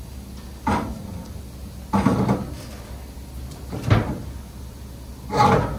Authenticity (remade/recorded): recorded